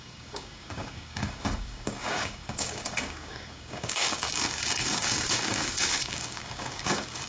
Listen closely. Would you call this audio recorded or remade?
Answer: remade